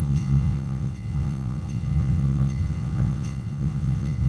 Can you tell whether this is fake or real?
fake